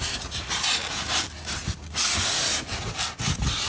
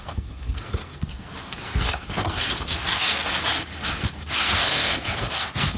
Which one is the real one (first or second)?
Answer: first